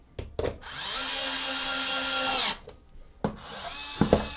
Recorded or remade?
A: recorded